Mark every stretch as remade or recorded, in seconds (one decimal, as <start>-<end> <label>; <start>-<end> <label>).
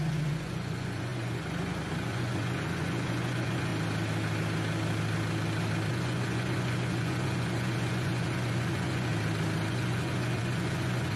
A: 0.0-3.7 remade; 3.7-5.9 recorded; 5.9-9.1 remade; 9.1-9.7 recorded; 9.7-11.2 remade